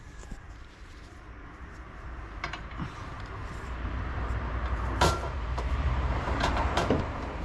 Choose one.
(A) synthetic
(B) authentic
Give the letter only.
A